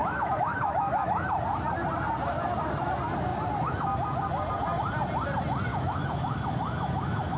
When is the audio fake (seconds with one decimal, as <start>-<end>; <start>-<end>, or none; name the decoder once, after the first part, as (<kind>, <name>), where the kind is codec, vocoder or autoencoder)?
0.0-1.2 (autoencoder, DAC-VAE); 5.7-7.4